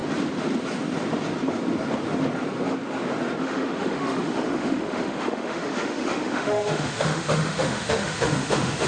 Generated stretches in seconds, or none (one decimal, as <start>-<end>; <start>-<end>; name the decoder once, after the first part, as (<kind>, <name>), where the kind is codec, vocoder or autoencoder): 3.4-8.9 (autoencoder, DAC-VAE)